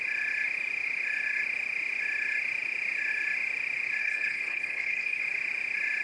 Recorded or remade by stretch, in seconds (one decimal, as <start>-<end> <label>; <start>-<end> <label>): 0.0-4.0 recorded; 4.0-5.2 remade; 5.2-6.0 recorded